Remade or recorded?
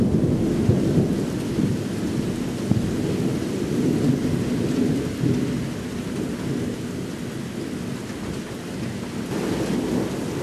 recorded